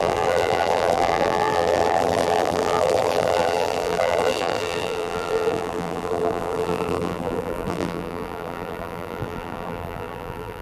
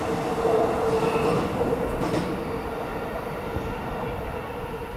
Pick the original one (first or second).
second